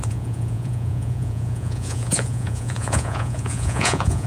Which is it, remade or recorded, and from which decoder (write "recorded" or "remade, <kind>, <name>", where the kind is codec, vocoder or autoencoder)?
remade, vocoder, Vocos